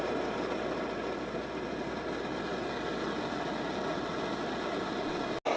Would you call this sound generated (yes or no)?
no